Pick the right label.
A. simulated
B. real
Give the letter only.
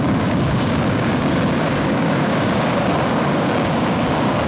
A